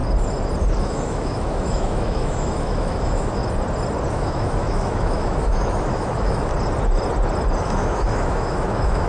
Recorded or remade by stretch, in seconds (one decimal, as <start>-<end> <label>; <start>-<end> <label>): 0.0-0.8 recorded; 0.8-3.4 remade; 3.4-4.1 recorded; 4.1-6.5 remade; 6.5-7.6 recorded; 7.6-9.1 remade